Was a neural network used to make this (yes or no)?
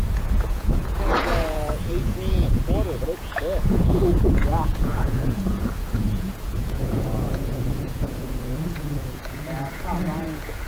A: yes